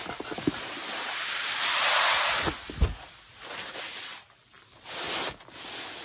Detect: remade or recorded recorded